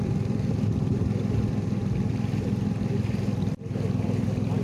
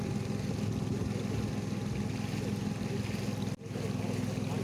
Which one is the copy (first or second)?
first